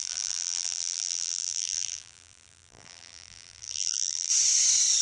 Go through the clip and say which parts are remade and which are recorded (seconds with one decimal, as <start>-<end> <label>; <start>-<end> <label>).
0.0-4.3 remade; 4.3-5.0 recorded